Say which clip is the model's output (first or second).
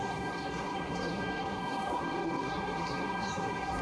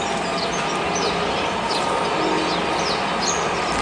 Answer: first